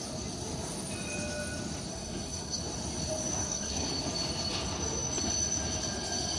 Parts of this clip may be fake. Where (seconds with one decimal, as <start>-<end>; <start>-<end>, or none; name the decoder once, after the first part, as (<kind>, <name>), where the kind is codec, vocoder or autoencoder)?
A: 1.9-2.6 (codec, SNAC); 3.4-3.9